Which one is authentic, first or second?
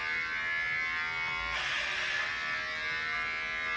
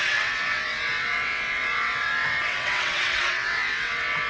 first